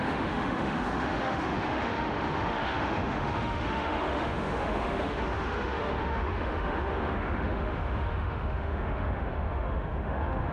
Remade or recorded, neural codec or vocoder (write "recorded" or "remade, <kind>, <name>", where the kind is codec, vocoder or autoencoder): remade, autoencoder, DAC-VAE